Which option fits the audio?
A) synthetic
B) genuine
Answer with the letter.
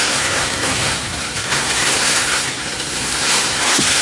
A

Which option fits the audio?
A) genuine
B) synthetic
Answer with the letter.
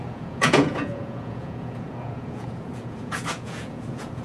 B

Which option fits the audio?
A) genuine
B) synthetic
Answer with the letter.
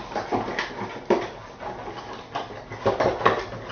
A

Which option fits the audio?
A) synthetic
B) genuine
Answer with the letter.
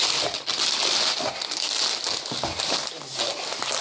B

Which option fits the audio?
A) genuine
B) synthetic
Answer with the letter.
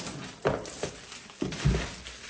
A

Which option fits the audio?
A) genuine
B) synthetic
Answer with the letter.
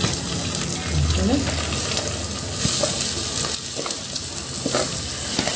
A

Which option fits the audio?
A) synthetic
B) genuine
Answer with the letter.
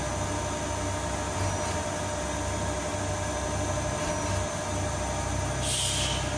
B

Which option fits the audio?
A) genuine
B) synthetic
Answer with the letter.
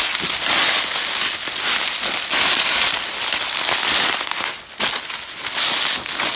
A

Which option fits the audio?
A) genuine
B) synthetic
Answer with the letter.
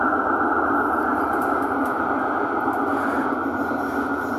A